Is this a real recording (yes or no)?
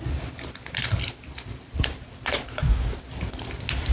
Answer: yes